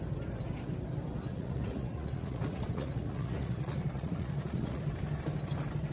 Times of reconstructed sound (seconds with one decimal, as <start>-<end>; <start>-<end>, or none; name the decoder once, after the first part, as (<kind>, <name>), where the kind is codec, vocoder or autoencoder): 1.3-4.8 (vocoder, Vocos)